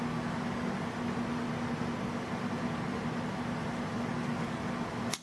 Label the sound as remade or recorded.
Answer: recorded